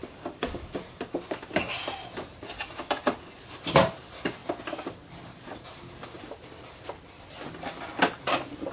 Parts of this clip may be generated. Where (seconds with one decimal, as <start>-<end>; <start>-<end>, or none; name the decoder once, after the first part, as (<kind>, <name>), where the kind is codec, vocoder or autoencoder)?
0.0-1.0 (vocoder, BigVGAN v2)